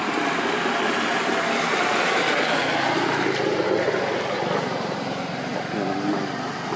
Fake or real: real